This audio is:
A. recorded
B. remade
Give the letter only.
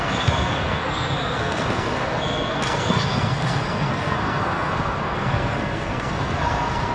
B